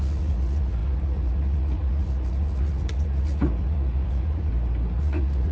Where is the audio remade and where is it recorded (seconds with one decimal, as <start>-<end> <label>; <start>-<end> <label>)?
0.0-4.5 remade; 4.5-5.0 recorded; 5.0-5.5 remade